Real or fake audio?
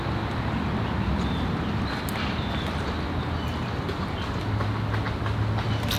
real